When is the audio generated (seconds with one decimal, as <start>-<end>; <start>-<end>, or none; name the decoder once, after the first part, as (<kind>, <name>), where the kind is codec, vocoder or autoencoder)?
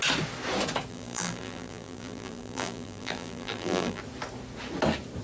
0.9-4.0 (vocoder, BigVGAN v2)